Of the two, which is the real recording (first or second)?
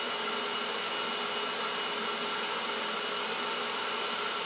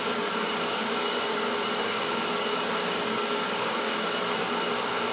first